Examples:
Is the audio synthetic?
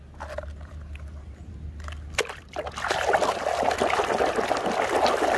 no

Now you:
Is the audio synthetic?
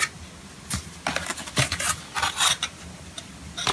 no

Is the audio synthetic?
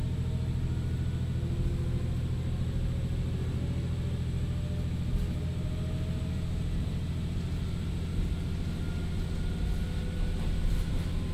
no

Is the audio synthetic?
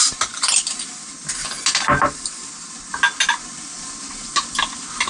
no